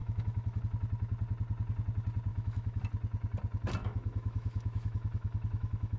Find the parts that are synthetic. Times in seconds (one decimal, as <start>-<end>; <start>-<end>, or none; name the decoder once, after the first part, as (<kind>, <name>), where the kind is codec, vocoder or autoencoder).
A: 0.0-0.6 (autoencoder, DAC-VAE); 2.3-2.8; 3.8-6.0